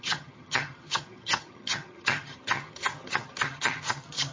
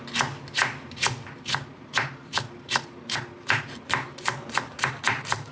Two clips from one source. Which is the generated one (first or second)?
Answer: first